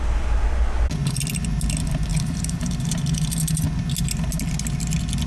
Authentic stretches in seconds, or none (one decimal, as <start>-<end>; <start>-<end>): 0.0-2.1; 3.2-5.3